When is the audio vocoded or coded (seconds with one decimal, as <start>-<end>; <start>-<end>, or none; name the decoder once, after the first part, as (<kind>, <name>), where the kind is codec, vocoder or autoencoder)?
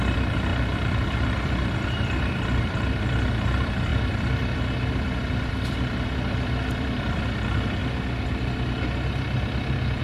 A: 0.0-7.8 (vocoder, BigVGAN v2)